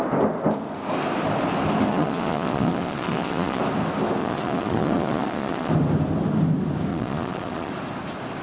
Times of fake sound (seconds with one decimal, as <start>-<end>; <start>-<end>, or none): 1.9-3.6; 4.2-5.7; 6.9-7.7